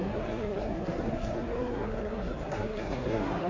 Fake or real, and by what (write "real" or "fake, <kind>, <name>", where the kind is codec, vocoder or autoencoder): fake, codec, SNAC